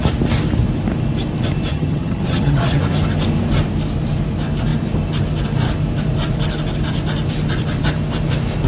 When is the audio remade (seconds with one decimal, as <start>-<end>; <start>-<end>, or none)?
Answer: 1.7-2.8